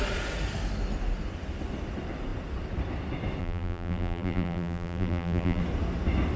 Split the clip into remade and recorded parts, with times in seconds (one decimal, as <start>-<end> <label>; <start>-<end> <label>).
0.0-3.4 recorded; 3.4-5.6 remade; 5.6-6.4 recorded